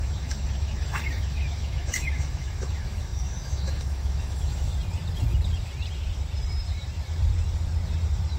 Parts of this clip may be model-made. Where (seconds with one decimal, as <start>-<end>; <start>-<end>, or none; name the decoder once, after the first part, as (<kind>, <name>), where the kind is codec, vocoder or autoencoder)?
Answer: 0.0-4.7 (autoencoder, DAC-VAE)